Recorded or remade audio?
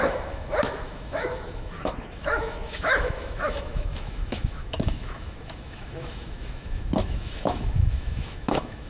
remade